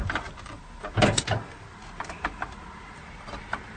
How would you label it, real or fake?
fake